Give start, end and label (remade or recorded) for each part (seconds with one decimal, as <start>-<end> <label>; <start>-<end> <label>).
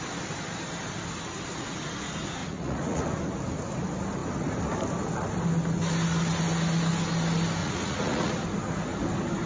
0.0-2.4 recorded; 2.4-3.0 remade; 3.0-7.6 recorded; 7.6-8.3 remade; 8.3-9.5 recorded